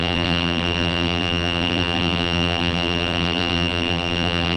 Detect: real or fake fake